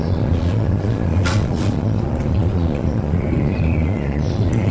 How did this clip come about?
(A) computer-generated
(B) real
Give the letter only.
A